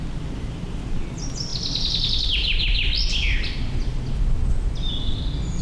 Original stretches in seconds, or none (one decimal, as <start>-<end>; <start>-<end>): 0.0-5.6